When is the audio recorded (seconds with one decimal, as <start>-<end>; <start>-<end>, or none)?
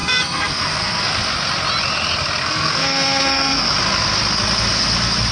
1.0-2.4; 3.7-5.3